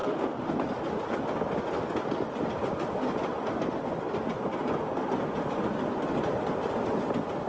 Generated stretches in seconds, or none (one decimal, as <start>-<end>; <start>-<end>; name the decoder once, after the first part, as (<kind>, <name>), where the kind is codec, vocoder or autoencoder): 0.0-0.5 (autoencoder, DAC-VAE)